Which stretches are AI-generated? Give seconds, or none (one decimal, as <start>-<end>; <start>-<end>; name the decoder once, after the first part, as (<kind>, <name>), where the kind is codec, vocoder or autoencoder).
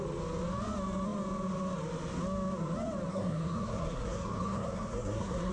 3.1-5.5 (codec, SNAC)